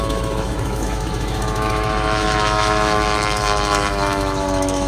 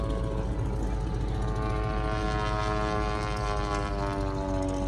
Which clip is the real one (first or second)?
second